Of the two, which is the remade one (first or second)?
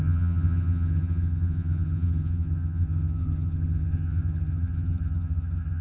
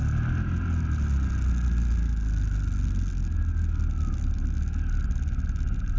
first